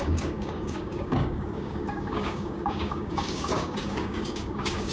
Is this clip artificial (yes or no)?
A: yes